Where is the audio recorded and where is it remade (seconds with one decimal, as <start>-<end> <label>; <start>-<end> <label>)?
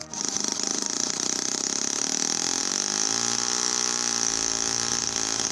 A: 0.0-5.5 recorded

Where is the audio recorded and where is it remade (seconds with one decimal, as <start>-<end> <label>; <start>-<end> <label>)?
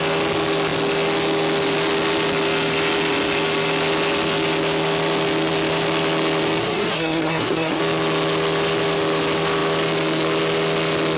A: 0.0-6.6 recorded; 6.6-7.8 remade; 7.8-11.2 recorded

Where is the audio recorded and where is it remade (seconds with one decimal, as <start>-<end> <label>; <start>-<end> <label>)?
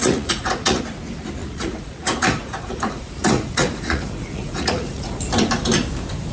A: 0.0-0.8 remade; 0.8-1.4 recorded; 1.4-5.2 remade; 5.2-6.3 recorded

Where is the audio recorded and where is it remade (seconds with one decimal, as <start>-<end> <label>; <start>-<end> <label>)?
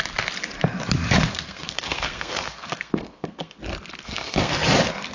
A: 0.0-1.3 recorded; 1.3-3.6 remade; 3.6-4.0 recorded; 4.0-4.5 remade; 4.5-5.1 recorded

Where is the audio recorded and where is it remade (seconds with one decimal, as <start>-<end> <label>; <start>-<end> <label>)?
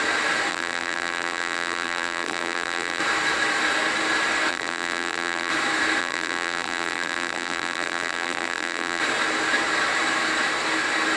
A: 0.0-0.5 recorded; 0.5-3.0 remade; 3.0-4.5 recorded; 4.5-5.5 remade; 5.5-6.0 recorded; 6.0-9.0 remade; 9.0-11.2 recorded